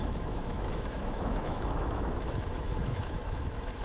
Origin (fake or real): fake